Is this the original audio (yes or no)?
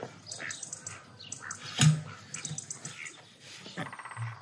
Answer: yes